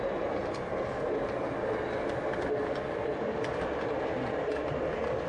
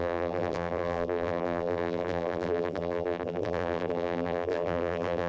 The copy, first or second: second